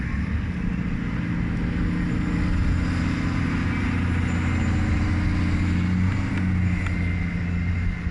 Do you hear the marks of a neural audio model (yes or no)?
no